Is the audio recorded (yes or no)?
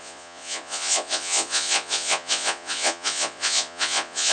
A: no